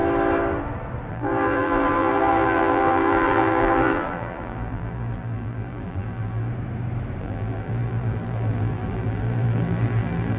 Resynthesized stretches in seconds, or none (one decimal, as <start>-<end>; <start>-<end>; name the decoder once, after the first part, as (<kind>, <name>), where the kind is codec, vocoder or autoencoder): 1.1-6.5 (vocoder, BigVGAN v2); 7.2-10.4